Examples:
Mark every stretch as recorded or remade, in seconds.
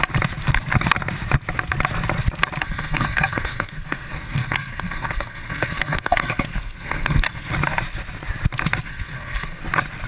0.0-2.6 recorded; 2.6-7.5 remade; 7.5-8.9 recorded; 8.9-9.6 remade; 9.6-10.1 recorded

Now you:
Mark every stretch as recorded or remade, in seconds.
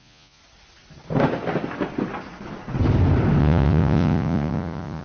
0.0-0.4 remade; 0.4-3.4 recorded; 3.4-5.0 remade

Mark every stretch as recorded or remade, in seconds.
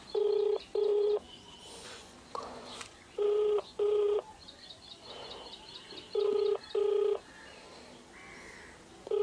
0.0-0.9 recorded; 0.9-5.1 remade; 5.1-9.2 recorded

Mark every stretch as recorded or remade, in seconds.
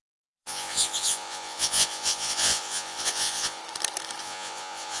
0.0-3.6 remade; 3.6-4.2 recorded; 4.2-5.0 remade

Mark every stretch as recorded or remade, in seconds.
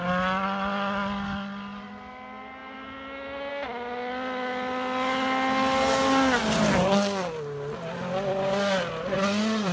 0.0-9.7 recorded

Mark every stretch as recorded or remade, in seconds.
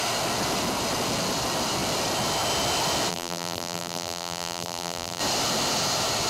0.0-3.1 recorded; 3.1-5.2 remade; 5.2-6.3 recorded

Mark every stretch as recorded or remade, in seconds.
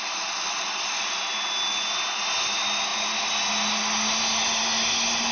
0.0-5.3 recorded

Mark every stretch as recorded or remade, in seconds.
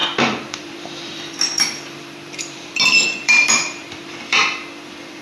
0.0-5.2 remade